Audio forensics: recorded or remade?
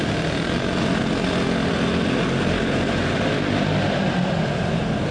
recorded